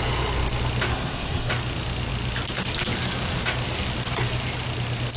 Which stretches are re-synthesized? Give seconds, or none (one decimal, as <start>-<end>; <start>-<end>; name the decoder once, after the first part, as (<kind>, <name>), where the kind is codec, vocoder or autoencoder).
0.9-1.5 (codec, SNAC)